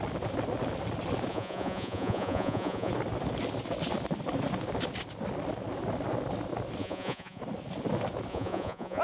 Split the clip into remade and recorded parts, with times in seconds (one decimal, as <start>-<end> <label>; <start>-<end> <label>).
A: 0.0-1.3 recorded; 1.3-2.9 remade; 2.9-6.8 recorded; 6.8-7.4 remade; 7.4-8.3 recorded; 8.3-9.0 remade